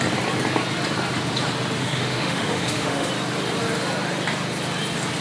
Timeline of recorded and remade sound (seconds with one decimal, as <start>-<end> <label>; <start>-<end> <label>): 0.0-1.8 recorded; 1.8-3.1 remade; 3.1-5.2 recorded